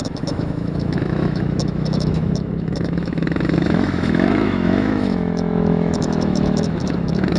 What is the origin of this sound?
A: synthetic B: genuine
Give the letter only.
A